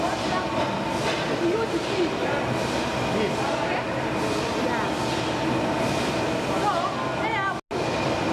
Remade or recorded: recorded